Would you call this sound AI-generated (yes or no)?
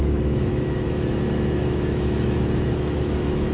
yes